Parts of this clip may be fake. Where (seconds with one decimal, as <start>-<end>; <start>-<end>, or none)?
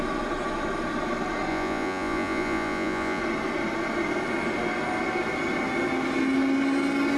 1.5-3.2